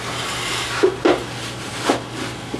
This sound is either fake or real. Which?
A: real